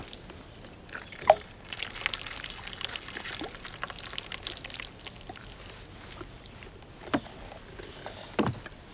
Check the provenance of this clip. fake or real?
real